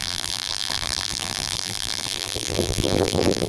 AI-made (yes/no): yes